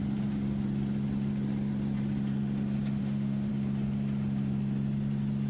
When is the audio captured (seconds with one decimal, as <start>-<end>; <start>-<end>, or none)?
0.0-3.0; 3.5-5.5